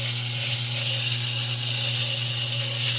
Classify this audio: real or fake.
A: real